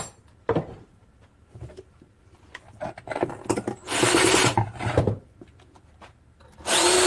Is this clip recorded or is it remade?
recorded